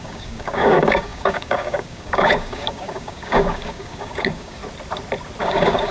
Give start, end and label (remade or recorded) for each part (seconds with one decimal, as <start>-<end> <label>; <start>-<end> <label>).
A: 0.0-4.6 remade; 4.6-5.4 recorded; 5.4-5.9 remade